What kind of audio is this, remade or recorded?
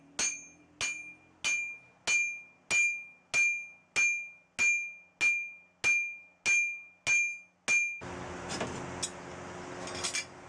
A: recorded